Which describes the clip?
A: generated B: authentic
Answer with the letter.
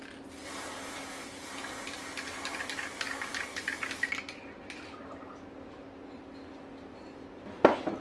B